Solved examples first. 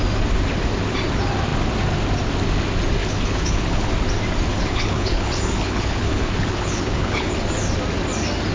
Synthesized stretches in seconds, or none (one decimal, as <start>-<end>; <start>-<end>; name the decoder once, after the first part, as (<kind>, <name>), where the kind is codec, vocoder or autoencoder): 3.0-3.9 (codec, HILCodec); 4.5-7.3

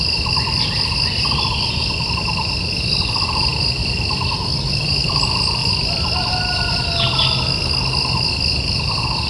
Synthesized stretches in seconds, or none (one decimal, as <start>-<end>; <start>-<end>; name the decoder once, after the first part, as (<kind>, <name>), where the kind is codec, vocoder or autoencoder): 3.8-4.4 (vocoder, BigVGAN v2); 5.6-6.3

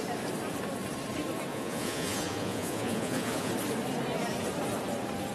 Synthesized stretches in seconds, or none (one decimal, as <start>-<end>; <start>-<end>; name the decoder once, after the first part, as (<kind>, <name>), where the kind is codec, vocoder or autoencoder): 1.5-3.5 (vocoder, Vocos)

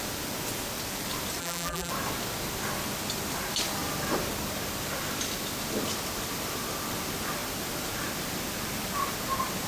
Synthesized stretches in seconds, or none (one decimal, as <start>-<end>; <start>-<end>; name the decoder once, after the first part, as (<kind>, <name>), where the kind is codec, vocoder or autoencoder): 1.4-1.9 (vocoder, BigVGAN v2)